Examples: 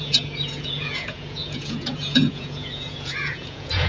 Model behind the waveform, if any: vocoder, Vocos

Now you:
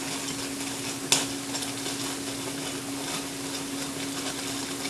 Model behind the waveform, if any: none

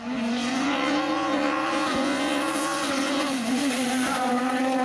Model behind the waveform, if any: vocoder, Vocos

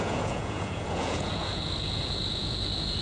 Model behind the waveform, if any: vocoder, Vocos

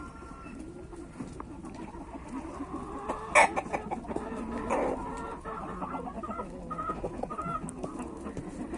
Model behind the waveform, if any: none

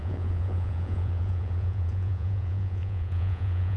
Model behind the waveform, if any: vocoder, Vocos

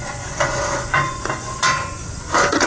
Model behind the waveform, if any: vocoder, Vocos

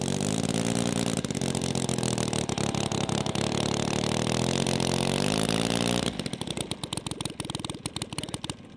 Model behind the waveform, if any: none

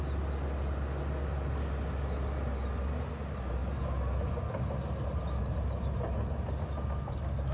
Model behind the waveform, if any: none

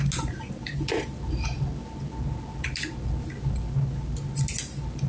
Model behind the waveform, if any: none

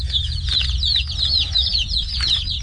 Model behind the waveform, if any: vocoder, Vocos